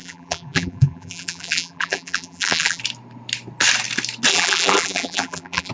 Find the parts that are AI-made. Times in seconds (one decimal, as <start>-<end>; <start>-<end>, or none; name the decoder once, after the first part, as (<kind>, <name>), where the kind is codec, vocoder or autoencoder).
0.0-2.8 (vocoder, BigVGAN v2); 4.3-5.7